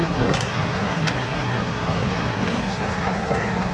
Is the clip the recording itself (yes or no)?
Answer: no